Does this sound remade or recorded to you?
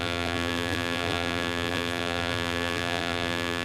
remade